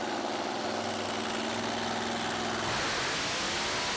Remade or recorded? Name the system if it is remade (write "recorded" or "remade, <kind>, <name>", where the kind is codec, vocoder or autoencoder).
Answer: recorded